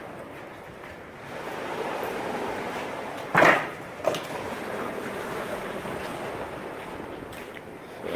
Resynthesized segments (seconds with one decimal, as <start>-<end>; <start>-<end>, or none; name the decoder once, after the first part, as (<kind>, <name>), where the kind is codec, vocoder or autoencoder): 0.0-6.1 (vocoder, BigVGAN v2)